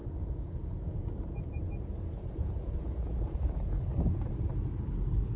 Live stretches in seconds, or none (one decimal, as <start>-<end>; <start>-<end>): 1.1-2.2; 4.3-5.4